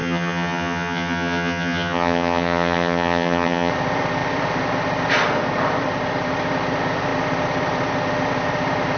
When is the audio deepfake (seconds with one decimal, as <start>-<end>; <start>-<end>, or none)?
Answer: 0.0-3.7